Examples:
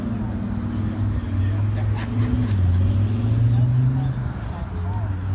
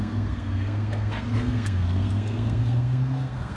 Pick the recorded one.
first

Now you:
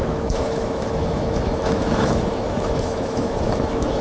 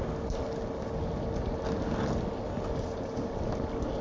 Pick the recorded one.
second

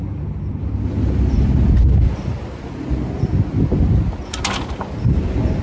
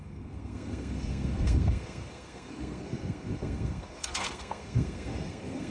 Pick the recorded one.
first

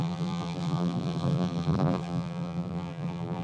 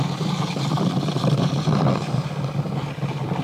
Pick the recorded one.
second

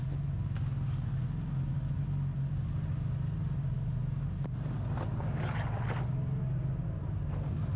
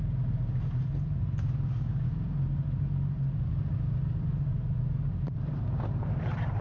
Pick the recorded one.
first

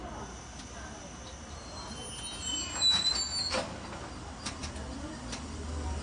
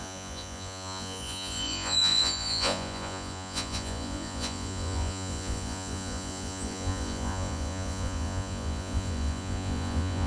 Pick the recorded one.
first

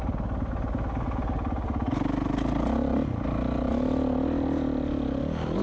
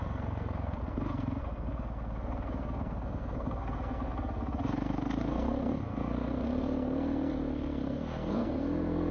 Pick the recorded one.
first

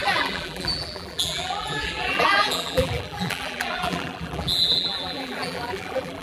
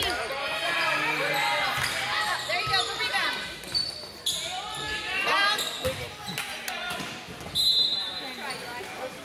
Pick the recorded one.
second